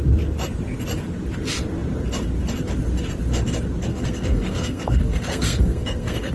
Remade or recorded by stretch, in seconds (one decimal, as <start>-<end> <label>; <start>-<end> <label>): 0.0-3.9 recorded; 3.9-6.3 remade